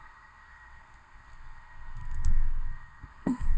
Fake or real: fake